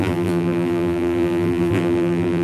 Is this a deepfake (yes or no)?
yes